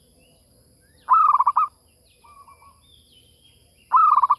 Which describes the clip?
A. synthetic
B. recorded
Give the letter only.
B